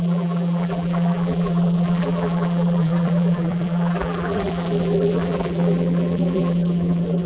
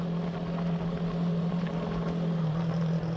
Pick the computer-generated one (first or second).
first